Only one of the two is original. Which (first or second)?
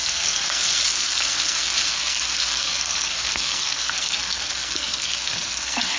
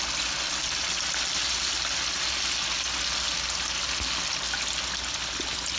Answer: second